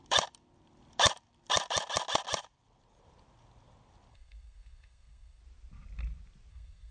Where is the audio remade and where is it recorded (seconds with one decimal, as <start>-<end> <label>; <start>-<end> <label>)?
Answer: 0.0-4.1 recorded; 4.1-5.4 remade; 5.4-6.5 recorded; 6.5-6.9 remade